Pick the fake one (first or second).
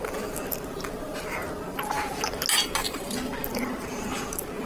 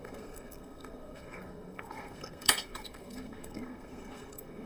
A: second